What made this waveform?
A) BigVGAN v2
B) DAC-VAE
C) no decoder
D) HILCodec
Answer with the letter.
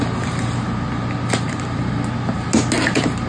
C